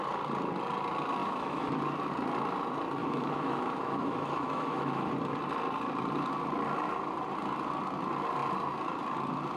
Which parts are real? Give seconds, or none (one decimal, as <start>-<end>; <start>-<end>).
0.0-1.2; 1.7-3.0; 5.1-9.6